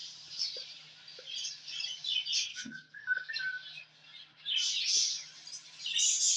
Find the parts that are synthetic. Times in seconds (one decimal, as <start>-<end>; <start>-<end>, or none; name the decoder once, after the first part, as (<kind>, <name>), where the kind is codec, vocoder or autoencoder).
2.5-3.3 (codec, SNAC)